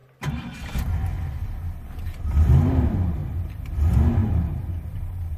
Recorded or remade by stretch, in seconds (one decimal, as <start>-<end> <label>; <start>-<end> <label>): 0.0-4.2 recorded; 4.2-5.4 remade

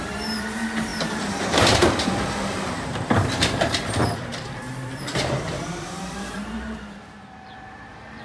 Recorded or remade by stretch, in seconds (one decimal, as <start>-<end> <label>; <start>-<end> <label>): 0.0-8.2 remade

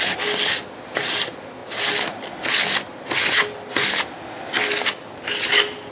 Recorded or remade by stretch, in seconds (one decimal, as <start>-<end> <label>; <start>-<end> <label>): 0.0-5.9 recorded